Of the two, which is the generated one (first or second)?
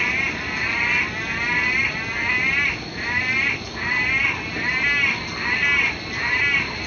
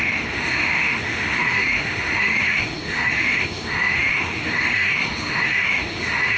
second